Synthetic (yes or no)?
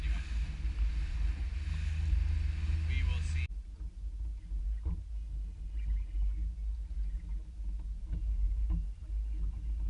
no